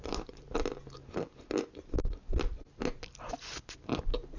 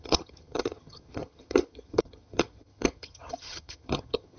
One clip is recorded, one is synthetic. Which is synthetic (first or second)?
second